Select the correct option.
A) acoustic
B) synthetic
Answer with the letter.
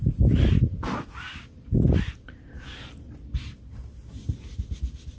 A